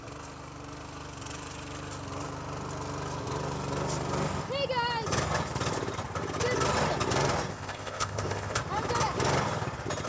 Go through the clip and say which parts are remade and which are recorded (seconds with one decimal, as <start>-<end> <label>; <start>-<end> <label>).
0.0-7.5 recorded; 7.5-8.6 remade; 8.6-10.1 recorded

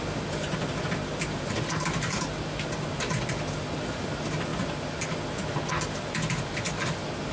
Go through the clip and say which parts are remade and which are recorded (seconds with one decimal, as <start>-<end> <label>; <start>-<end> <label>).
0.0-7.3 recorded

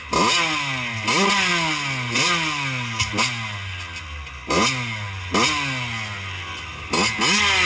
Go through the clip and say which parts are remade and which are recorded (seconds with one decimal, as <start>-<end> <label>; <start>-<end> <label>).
0.0-7.7 recorded

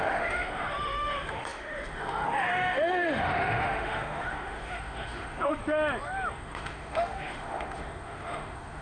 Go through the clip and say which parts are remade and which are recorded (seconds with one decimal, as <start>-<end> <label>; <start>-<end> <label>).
0.0-5.6 remade; 5.6-6.3 recorded; 6.3-8.8 remade